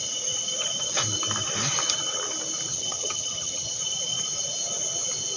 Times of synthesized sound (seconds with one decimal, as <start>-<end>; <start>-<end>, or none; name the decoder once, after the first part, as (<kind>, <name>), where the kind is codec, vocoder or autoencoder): 2.7-3.8 (vocoder, HiFi-GAN)